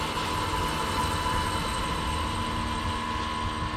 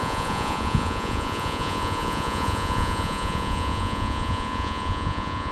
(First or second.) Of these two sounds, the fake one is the second